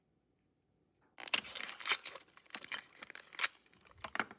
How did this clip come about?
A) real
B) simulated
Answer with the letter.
A